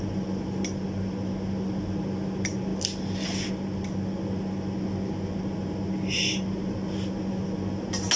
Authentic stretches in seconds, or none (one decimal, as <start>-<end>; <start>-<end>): 0.0-8.2

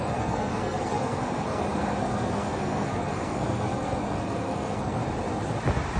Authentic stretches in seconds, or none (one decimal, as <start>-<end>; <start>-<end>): 5.0-6.0